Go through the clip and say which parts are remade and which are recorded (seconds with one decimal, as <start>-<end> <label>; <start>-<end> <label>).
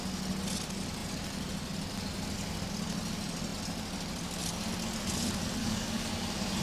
0.0-5.6 recorded; 5.6-6.1 remade; 6.1-6.6 recorded